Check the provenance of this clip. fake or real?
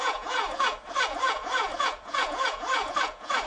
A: fake